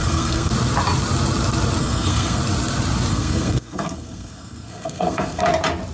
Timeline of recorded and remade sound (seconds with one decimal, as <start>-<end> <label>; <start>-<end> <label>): 0.0-0.5 remade; 0.5-1.8 recorded; 1.8-2.4 remade; 2.4-3.1 recorded; 3.1-5.4 remade; 5.4-5.9 recorded